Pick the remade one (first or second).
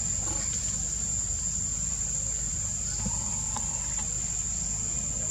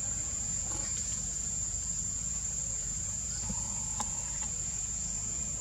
second